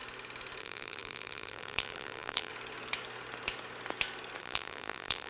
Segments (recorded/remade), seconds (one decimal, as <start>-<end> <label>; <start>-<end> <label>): 0.0-0.6 recorded; 0.6-2.5 remade; 2.5-4.4 recorded; 4.4-5.3 remade